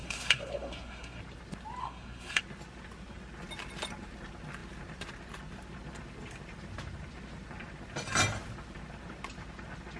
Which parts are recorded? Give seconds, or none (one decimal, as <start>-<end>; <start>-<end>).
1.2-1.8; 2.4-10.0